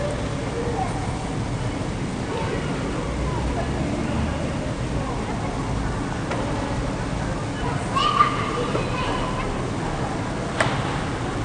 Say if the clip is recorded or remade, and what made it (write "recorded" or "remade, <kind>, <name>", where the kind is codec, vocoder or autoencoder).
recorded